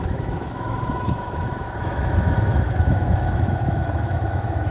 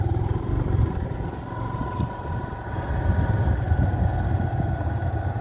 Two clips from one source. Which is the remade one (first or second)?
first